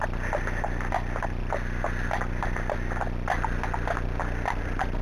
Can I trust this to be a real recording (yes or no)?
yes